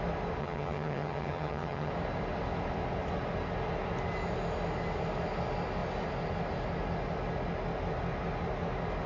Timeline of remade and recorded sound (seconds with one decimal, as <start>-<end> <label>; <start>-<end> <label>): 0.0-0.4 recorded; 0.4-1.9 remade; 1.9-9.1 recorded